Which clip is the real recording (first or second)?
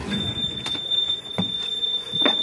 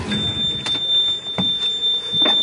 second